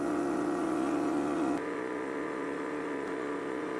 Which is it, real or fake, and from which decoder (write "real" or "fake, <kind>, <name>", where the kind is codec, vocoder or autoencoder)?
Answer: fake, vocoder, Vocos